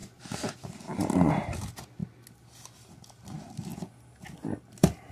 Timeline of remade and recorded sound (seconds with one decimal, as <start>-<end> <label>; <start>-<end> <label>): 0.0-5.1 recorded